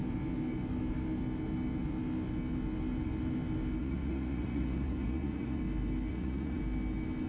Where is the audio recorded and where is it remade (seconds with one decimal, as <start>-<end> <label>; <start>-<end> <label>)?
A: 0.0-3.8 recorded; 3.8-5.6 remade; 5.6-6.1 recorded; 6.1-6.6 remade; 6.6-7.3 recorded